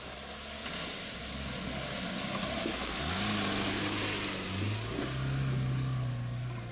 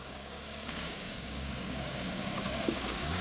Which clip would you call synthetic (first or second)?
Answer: second